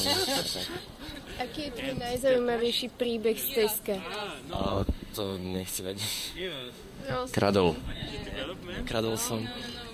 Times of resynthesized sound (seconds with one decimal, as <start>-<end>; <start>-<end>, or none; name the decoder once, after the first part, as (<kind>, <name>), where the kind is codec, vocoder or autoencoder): 4.7-8.1 (autoencoder, DAC-VAE)